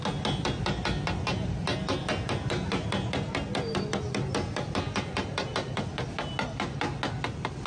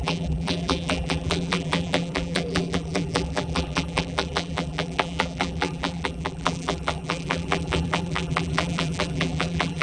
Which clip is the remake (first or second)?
second